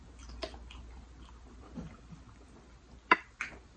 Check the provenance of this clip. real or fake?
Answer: real